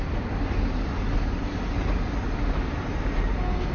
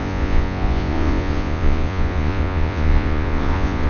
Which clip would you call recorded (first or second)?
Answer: first